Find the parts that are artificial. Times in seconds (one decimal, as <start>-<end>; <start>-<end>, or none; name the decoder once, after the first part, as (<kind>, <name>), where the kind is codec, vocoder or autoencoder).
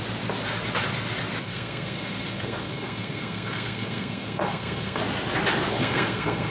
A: 1.4-5.0 (codec, SNAC); 5.7-6.5